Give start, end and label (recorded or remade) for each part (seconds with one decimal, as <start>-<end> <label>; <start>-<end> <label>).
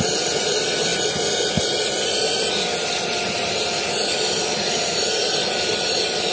0.0-6.3 recorded